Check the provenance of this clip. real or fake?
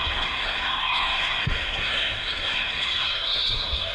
fake